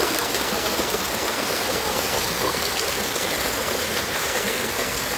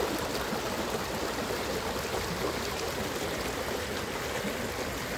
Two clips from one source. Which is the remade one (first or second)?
first